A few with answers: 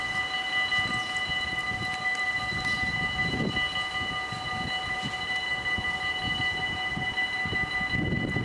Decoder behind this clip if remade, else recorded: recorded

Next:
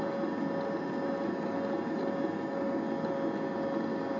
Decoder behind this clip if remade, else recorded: recorded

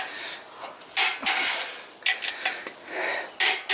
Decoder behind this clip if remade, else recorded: recorded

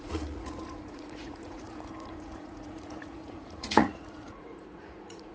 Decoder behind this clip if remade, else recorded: remade, vocoder, Vocos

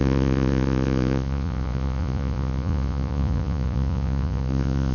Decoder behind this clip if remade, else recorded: remade, vocoder, Vocos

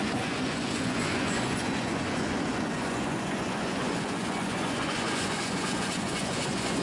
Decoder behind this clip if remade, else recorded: remade, vocoder, Vocos